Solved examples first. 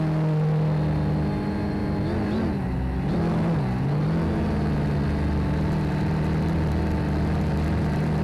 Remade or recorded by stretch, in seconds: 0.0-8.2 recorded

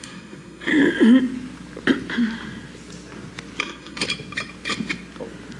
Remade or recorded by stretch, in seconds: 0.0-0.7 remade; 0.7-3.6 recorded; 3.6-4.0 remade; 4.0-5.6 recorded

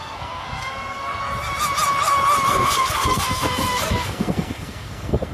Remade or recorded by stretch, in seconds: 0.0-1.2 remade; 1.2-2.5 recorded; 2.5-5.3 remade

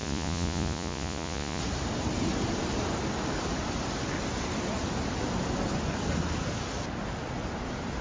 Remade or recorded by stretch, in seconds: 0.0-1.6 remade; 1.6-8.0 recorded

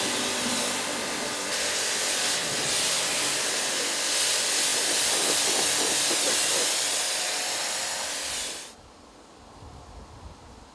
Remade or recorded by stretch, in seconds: 0.0-10.7 recorded

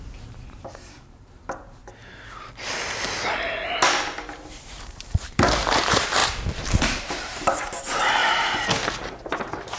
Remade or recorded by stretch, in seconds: 0.0-1.8 remade; 1.8-4.5 recorded; 4.5-8.2 remade; 8.2-9.8 recorded